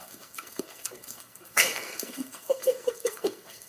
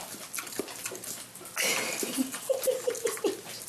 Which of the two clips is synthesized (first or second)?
first